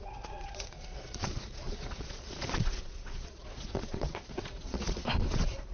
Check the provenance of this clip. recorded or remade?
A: remade